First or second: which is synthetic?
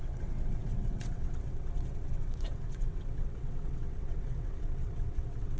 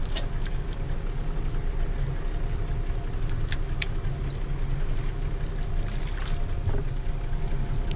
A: first